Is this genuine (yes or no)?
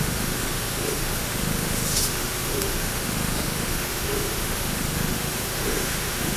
no